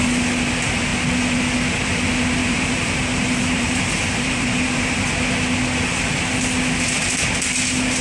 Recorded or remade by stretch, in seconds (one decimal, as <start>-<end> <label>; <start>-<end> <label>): 0.0-2.4 recorded; 2.4-5.1 remade; 5.1-8.0 recorded